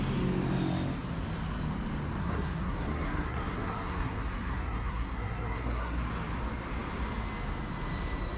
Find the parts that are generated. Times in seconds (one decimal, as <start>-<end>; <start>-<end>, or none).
2.2-6.1

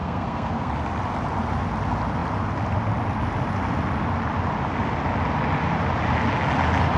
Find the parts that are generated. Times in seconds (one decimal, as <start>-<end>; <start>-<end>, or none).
0.0-0.7

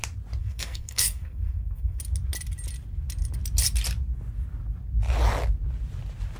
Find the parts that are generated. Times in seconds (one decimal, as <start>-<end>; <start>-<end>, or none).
0.4-2.0